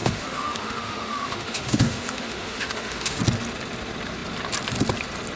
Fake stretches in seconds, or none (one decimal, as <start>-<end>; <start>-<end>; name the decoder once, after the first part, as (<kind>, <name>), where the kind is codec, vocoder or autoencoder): 0.0-3.2 (autoencoder, DAC-VAE)